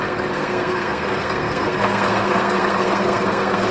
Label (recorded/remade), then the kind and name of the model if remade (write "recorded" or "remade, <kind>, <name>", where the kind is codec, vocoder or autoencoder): remade, codec, SNAC